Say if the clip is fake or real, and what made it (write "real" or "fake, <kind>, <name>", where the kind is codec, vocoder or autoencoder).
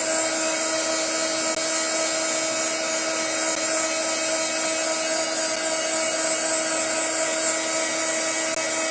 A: real